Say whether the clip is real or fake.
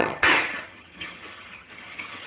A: fake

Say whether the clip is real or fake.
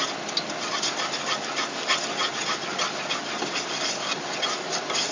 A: real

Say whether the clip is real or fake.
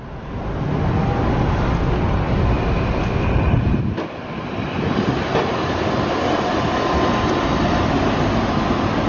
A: real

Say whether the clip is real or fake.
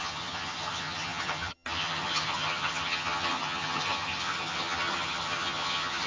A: fake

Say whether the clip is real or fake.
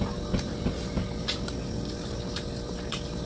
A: real